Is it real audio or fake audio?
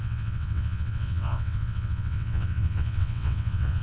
fake